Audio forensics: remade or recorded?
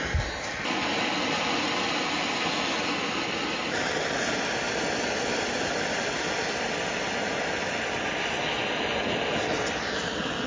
recorded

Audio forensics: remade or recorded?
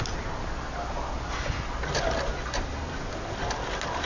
recorded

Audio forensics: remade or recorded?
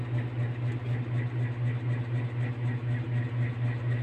recorded